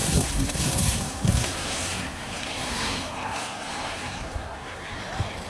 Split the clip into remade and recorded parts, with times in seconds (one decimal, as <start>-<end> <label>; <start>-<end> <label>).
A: 0.0-5.0 remade; 5.0-5.5 recorded